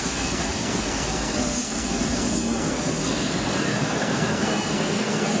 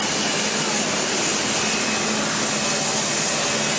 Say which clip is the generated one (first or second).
first